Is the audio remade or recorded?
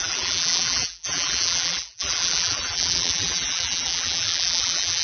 remade